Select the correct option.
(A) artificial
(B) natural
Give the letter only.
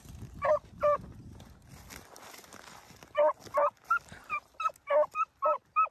B